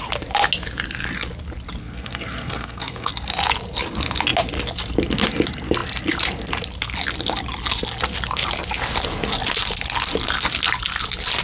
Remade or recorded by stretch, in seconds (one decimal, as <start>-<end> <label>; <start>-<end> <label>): 0.0-1.8 recorded; 1.8-3.1 remade; 3.1-11.4 recorded

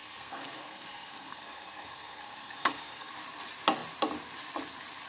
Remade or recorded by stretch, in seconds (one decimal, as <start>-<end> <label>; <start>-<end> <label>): 0.0-3.1 remade; 3.1-5.1 recorded

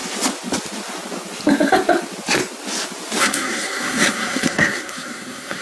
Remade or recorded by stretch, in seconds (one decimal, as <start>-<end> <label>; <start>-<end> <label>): 0.0-3.2 recorded; 3.2-5.6 remade

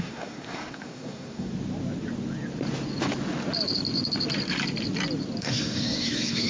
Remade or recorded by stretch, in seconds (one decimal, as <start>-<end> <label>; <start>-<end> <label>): 0.0-1.5 remade; 1.5-5.4 recorded; 5.4-6.5 remade

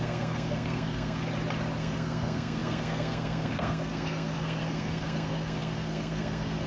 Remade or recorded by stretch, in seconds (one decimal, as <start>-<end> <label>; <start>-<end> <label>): 0.0-1.2 remade; 1.2-1.8 recorded; 1.8-6.7 remade

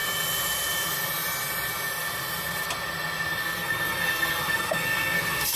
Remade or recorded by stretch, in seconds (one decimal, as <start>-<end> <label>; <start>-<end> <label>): 0.0-3.4 recorded; 3.4-5.6 remade

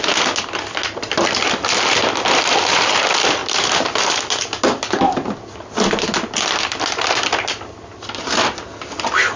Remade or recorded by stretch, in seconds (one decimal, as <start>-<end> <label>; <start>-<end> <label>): 0.0-9.4 recorded